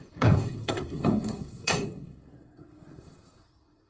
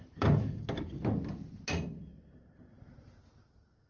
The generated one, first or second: first